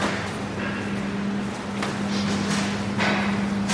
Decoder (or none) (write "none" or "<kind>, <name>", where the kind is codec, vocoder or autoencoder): none